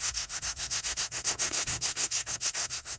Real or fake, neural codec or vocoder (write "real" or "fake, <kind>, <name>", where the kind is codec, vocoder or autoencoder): fake, codec, SNAC